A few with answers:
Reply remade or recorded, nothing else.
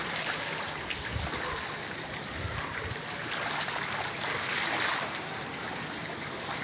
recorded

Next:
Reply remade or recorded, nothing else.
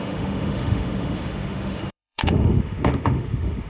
remade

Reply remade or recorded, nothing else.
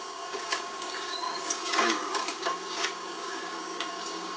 remade